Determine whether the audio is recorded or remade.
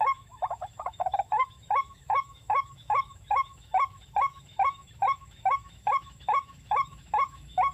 remade